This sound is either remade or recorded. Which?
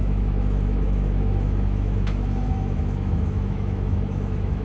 remade